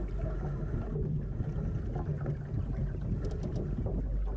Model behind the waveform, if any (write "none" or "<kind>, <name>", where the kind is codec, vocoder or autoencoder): none